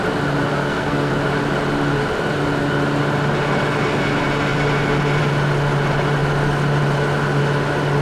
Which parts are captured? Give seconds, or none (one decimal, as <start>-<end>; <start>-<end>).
0.0-0.5; 1.1-8.0